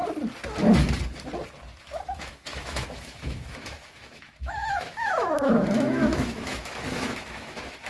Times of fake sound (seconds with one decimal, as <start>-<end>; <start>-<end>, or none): 1.8-7.9